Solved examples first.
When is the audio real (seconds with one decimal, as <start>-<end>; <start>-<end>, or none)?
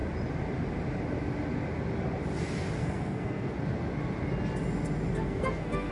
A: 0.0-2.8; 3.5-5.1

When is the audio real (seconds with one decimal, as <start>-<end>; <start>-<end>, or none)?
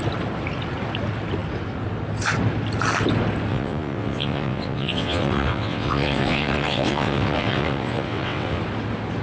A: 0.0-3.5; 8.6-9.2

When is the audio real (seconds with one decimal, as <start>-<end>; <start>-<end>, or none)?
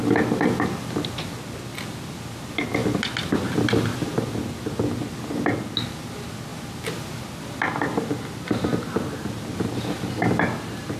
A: 0.0-11.0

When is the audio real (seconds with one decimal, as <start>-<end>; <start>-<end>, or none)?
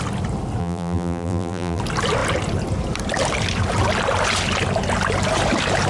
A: 0.0-0.6; 1.8-5.9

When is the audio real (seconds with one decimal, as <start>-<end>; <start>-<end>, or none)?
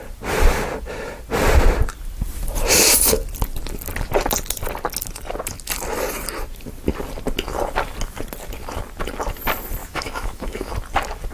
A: 0.0-9.8; 10.7-11.3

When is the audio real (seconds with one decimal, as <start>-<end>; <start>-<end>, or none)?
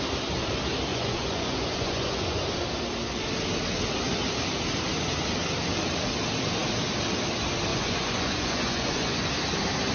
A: 0.0-0.9; 2.4-7.7; 9.3-9.9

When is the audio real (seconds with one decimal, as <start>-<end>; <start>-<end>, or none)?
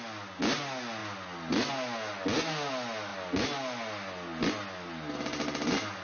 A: 0.0-6.0